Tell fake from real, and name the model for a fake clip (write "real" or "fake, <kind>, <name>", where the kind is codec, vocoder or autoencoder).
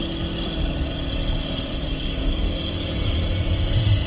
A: real